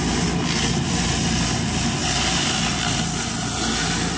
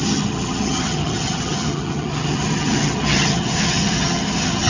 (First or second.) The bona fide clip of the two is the first